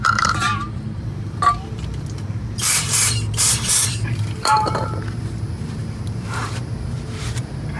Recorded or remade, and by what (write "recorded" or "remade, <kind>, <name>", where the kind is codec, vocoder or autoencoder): remade, vocoder, BigVGAN v2